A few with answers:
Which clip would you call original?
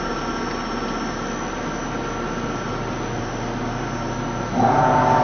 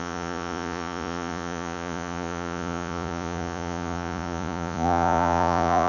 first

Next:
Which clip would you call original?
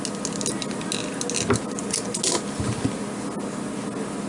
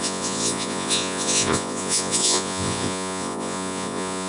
first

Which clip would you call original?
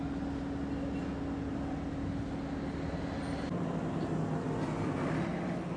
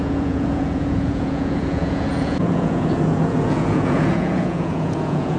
first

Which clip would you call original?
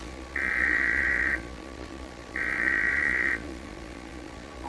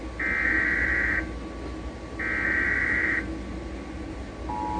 second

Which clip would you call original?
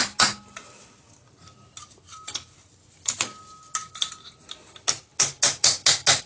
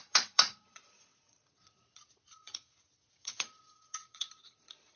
first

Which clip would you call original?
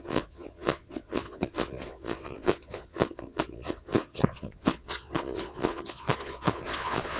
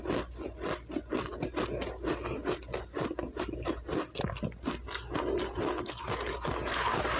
second